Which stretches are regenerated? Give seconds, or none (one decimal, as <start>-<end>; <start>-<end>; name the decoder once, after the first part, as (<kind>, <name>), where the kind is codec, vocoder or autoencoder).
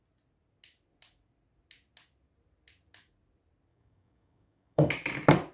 3.7-4.9 (codec, DAC)